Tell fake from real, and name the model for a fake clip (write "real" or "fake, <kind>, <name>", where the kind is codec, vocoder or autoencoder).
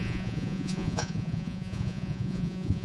fake, vocoder, Vocos